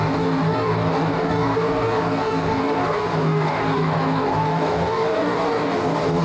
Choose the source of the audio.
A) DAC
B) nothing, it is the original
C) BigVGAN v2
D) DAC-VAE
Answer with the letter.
A